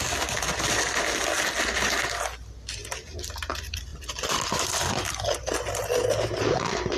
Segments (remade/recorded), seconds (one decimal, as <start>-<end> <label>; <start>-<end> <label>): 0.0-3.9 recorded; 3.9-5.5 remade; 5.5-7.0 recorded